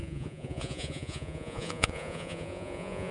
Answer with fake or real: fake